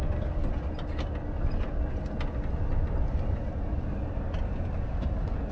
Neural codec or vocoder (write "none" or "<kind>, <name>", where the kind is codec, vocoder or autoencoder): none